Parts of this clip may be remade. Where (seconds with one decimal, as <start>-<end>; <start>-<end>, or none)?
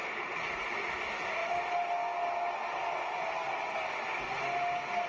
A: none